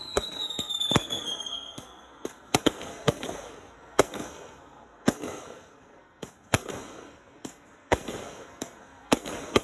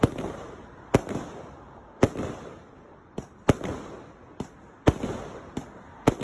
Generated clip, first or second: first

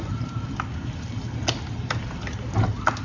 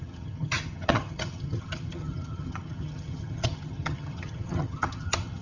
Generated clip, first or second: second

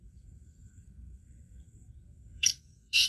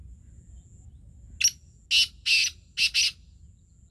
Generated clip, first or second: first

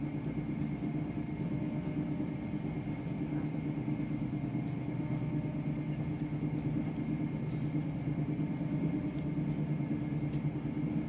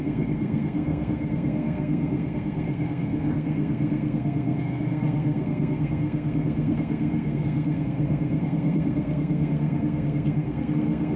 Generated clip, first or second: second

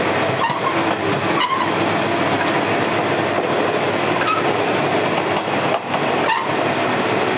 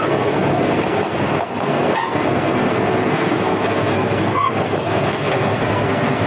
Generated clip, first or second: second